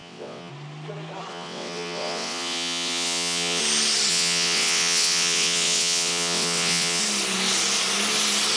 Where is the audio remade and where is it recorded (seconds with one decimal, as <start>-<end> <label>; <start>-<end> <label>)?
0.0-0.5 remade; 0.5-1.3 recorded; 1.3-3.6 remade; 3.6-4.1 recorded; 4.1-7.0 remade; 7.0-8.6 recorded